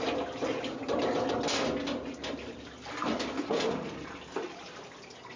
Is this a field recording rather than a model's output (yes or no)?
yes